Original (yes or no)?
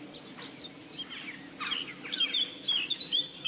yes